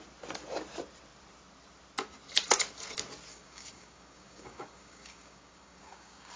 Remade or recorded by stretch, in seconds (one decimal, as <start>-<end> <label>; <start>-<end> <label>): 0.0-3.3 recorded; 3.3-6.4 remade